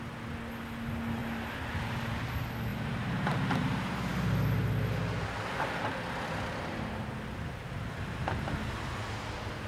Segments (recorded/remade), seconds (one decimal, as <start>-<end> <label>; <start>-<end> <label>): 0.0-2.7 recorded; 2.7-3.6 remade; 3.6-9.7 recorded